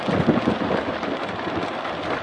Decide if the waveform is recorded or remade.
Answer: recorded